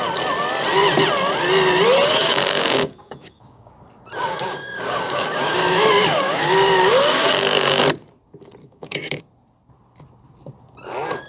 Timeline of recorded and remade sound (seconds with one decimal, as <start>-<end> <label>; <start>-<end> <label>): 0.0-2.1 recorded; 2.1-3.7 remade; 3.7-4.2 recorded; 4.2-7.8 remade; 7.8-8.6 recorded; 8.6-9.2 remade; 9.2-11.3 recorded